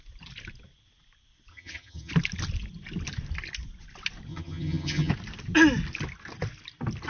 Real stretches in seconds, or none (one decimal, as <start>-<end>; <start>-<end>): 0.0-1.5; 2.1-4.3; 5.1-7.1